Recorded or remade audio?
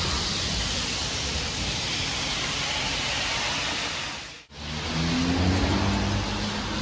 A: recorded